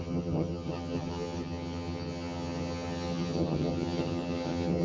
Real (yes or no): no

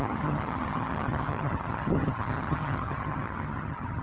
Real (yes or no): no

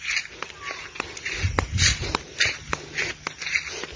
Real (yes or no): yes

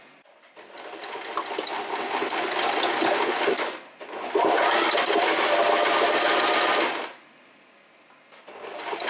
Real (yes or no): yes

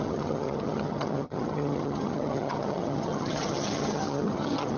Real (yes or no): no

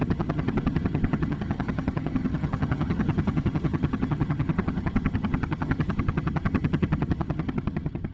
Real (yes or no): no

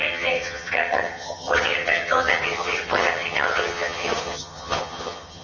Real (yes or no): no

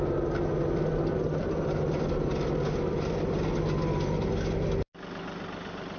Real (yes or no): yes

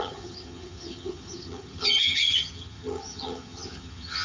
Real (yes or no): no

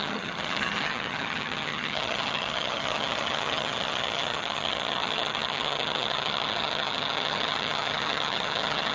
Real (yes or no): no